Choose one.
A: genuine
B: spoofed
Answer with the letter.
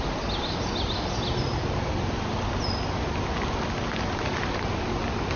A